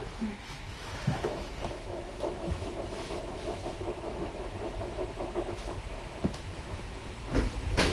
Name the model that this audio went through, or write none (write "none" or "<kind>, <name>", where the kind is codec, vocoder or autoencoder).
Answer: autoencoder, DAC-VAE